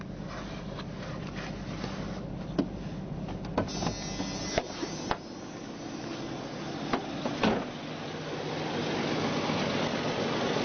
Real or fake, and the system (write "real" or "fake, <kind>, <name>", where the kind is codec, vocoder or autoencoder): real